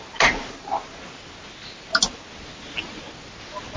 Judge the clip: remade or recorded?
recorded